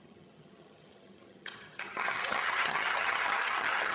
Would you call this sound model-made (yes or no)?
yes